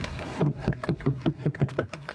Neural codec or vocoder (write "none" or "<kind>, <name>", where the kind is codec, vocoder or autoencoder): codec, SNAC